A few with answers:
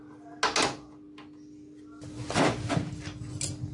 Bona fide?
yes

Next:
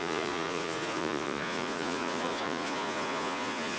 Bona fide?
no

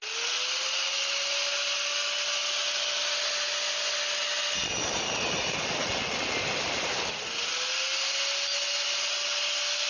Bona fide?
yes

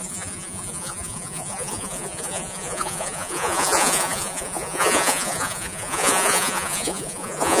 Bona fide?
no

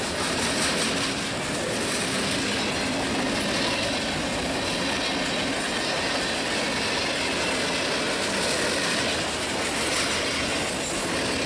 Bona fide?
yes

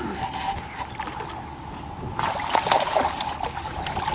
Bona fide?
yes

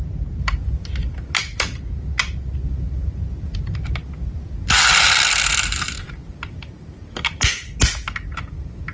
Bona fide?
yes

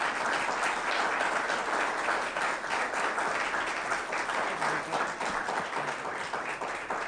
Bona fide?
yes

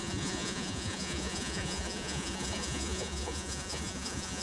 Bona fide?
no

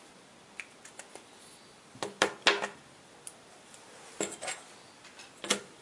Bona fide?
yes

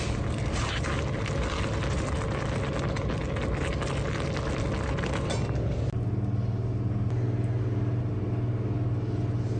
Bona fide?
yes